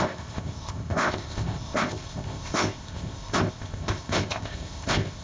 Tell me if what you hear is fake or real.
fake